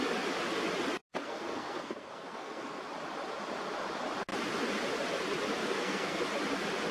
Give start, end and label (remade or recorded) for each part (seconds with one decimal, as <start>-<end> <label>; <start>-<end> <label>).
0.0-1.1 recorded; 1.1-2.8 remade; 2.8-5.6 recorded; 5.6-6.2 remade; 6.2-6.9 recorded